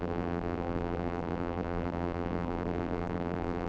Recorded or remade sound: remade